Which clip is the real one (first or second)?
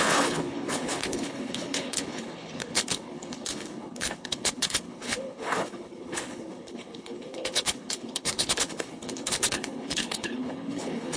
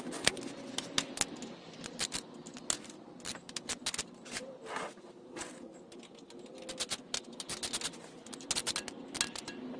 second